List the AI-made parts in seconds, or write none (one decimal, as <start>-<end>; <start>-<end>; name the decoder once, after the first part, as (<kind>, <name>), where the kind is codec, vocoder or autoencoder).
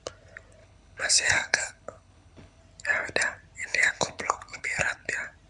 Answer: 0.6-2.6 (codec, HILCodec); 3.6-5.1